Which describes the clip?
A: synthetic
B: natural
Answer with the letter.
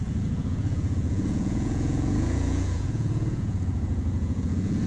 A